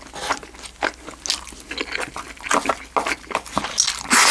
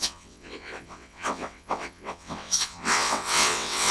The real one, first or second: first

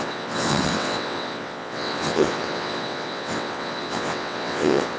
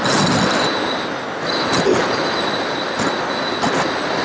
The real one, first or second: second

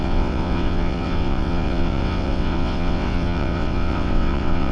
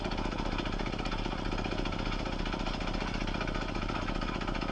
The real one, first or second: second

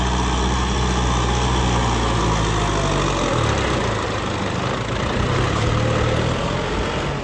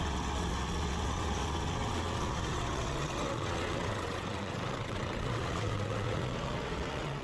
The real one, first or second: first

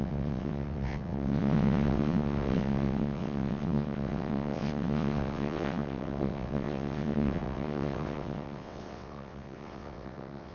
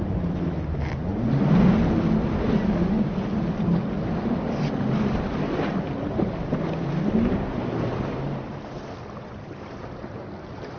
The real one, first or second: second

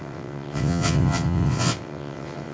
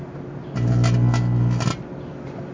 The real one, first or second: second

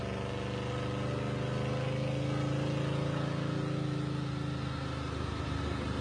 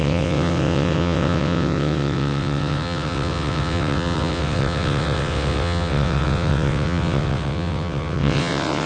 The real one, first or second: first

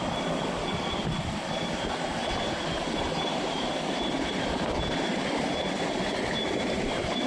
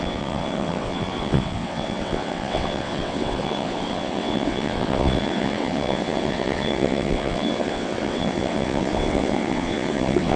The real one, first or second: first